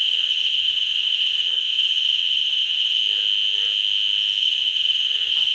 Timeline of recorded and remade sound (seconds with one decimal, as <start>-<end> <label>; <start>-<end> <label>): 0.0-3.0 remade; 3.0-4.4 recorded; 4.4-5.5 remade